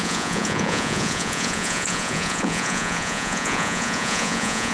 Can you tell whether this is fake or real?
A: fake